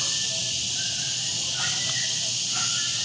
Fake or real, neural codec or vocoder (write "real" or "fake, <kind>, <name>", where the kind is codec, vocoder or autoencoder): real